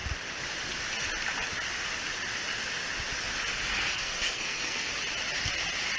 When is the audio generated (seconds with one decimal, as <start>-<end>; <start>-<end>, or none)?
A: 3.7-4.9